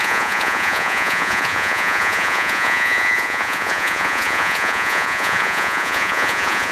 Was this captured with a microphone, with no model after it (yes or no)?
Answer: no